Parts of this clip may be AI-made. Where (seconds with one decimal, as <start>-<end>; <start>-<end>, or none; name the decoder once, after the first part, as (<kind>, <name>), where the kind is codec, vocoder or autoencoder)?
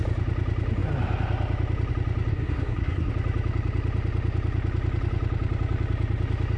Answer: 2.3-3.1 (codec, SNAC)